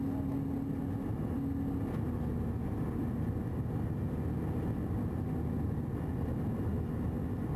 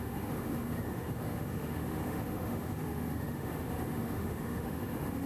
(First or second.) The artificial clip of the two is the second